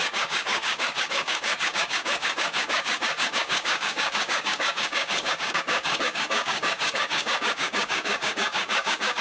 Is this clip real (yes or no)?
no